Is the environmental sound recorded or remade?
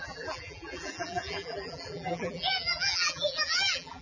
remade